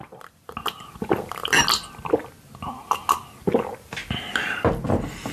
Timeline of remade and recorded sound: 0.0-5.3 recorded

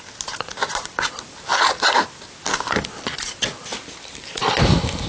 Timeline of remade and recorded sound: 0.0-5.1 recorded

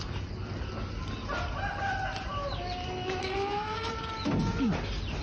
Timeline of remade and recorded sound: 0.0-3.2 recorded; 3.2-3.9 remade; 3.9-5.2 recorded

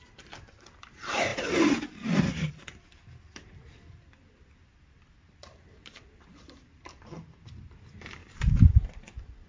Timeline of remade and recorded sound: 0.0-1.3 remade; 1.3-2.5 recorded; 2.5-8.2 remade; 8.2-8.8 recorded; 8.8-9.5 remade

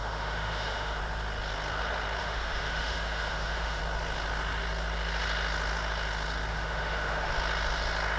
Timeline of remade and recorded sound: 0.0-1.0 remade; 1.0-2.2 recorded; 2.2-3.8 remade; 3.8-6.5 recorded; 6.5-7.3 remade; 7.3-8.2 recorded

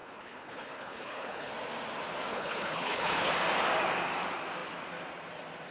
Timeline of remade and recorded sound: 0.0-1.5 remade; 1.5-2.3 recorded; 2.3-3.3 remade; 3.3-5.7 recorded

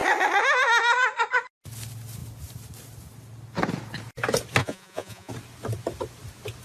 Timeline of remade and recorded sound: 0.0-4.6 recorded; 4.6-5.3 remade; 5.3-6.6 recorded

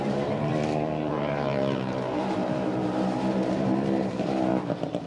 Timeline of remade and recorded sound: 0.0-0.5 remade; 0.5-1.1 recorded; 1.1-2.8 remade; 2.8-4.0 recorded; 4.0-4.5 remade; 4.5-5.1 recorded